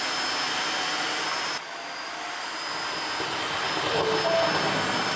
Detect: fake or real real